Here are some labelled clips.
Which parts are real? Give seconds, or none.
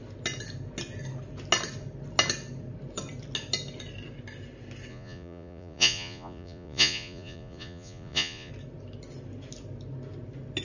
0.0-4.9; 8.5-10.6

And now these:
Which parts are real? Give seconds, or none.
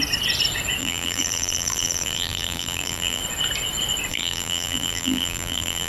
0.0-0.8; 3.2-4.1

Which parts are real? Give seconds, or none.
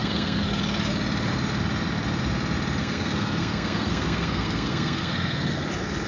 0.6-2.8; 5.6-6.1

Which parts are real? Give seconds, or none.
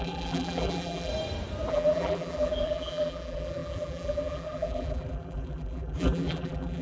1.1-1.7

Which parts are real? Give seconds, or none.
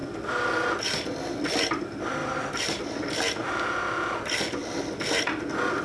0.0-2.2; 2.8-5.8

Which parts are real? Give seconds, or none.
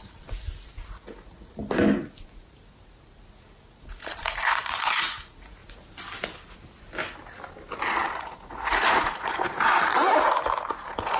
1.6-3.3; 5.6-7.9; 9.9-10.7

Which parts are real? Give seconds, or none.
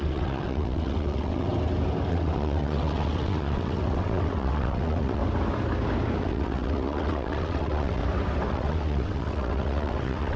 1.5-2.1; 5.2-6.2; 8.0-8.5